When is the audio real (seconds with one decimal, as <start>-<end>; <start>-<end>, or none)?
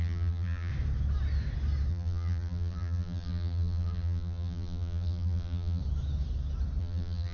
0.7-1.9; 5.8-6.8